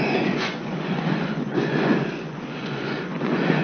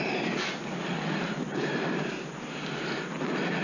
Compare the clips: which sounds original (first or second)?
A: second